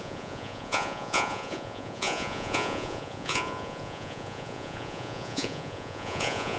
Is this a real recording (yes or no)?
no